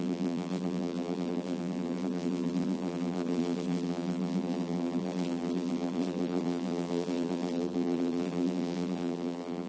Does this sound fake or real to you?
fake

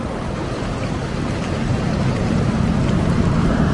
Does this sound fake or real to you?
fake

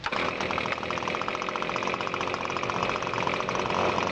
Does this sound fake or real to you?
real